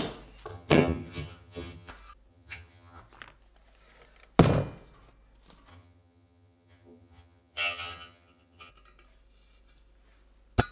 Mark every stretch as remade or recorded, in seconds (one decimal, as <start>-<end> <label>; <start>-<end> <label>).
0.0-0.5 recorded; 0.5-1.9 remade; 1.9-2.3 recorded; 2.3-3.0 remade; 3.0-5.7 recorded; 5.7-8.7 remade; 8.7-10.7 recorded